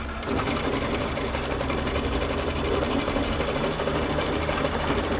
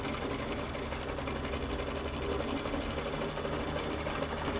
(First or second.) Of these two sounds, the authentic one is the second